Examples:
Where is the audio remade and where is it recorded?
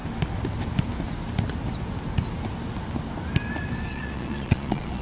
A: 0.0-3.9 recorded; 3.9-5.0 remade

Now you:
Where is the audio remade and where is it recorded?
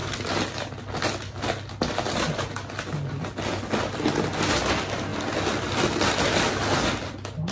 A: 0.0-7.5 recorded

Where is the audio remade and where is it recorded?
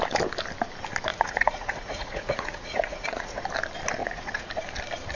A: 0.0-1.1 recorded; 1.1-3.4 remade; 3.4-4.0 recorded; 4.0-4.5 remade; 4.5-5.1 recorded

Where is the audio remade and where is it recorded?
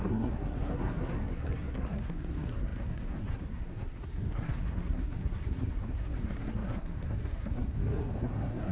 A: 0.0-8.7 remade